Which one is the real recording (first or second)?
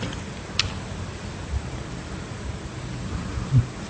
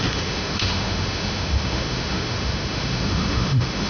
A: first